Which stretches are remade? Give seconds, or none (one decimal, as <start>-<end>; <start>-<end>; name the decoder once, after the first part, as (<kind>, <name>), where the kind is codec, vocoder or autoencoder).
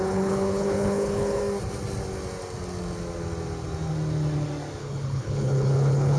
0.0-1.4 (codec, HILCodec); 4.8-6.2